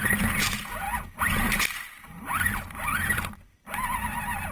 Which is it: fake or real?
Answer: real